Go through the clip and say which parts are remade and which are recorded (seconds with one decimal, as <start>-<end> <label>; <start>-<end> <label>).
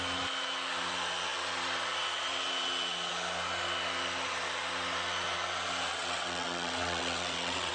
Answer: 0.0-5.9 recorded; 5.9-7.7 remade